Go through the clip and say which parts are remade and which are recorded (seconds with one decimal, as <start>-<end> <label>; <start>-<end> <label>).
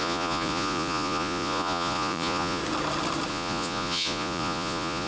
0.0-2.6 remade; 2.6-3.3 recorded; 3.3-5.1 remade